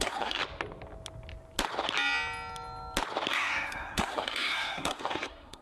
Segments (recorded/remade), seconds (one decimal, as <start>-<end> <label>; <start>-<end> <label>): 0.0-0.4 remade; 0.4-3.3 recorded; 3.3-5.6 remade